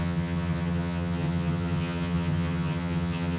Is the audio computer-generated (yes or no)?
yes